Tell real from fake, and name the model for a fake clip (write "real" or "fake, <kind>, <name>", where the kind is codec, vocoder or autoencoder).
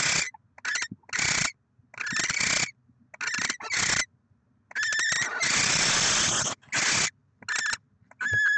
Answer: real